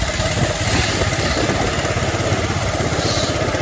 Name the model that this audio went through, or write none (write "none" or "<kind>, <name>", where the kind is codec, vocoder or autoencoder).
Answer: none